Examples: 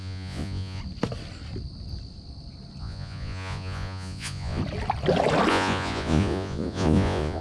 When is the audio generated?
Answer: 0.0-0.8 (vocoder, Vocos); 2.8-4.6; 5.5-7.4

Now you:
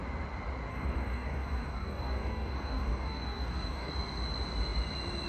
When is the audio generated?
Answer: 0.7-3.9 (codec, DAC)

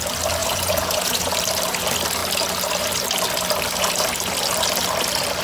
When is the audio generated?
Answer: 0.4-1.3 (vocoder, Vocos)

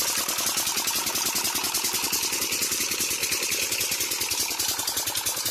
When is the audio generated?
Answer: none

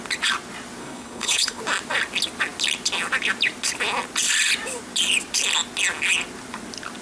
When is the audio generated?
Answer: 0.8-1.6 (codec, HILCodec)

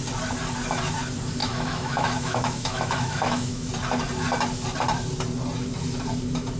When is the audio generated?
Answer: 1.4-3.7 (autoencoder, DAC-VAE)

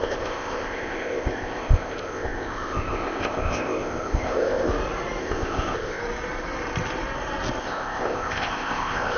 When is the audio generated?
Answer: 0.0-4.7 (codec, ZipCodec); 5.2-6.0; 7.6-9.2

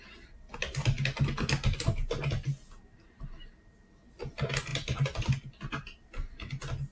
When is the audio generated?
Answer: none